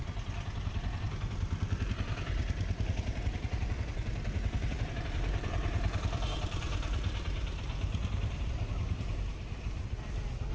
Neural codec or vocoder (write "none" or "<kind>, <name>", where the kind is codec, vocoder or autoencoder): vocoder, BigVGAN v2